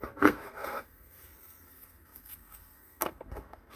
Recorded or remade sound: remade